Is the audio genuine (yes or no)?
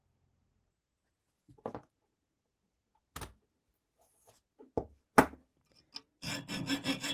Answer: yes